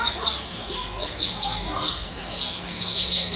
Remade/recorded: remade